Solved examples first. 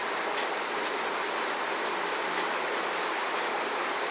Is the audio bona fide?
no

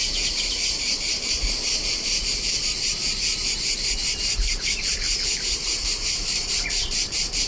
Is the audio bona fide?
no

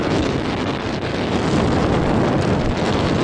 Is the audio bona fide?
no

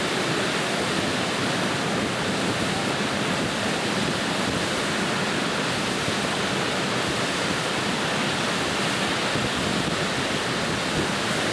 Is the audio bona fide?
yes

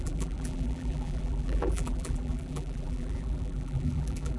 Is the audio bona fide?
no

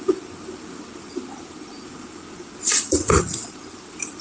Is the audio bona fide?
no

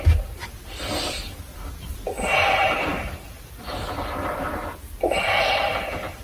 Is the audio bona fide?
yes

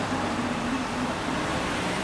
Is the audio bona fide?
no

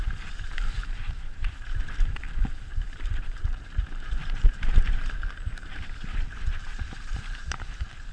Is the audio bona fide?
no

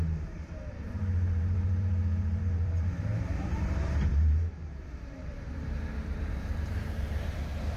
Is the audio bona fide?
no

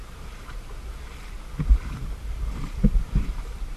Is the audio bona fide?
no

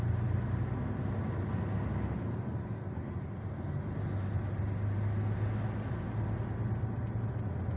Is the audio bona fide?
yes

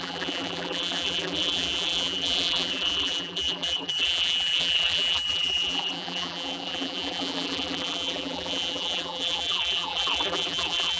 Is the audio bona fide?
no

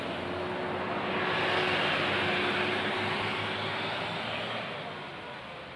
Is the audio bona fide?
yes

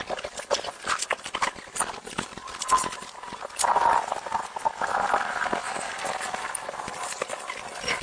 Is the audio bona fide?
no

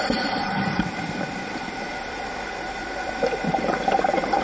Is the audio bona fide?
no